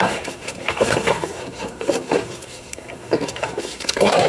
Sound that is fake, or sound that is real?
fake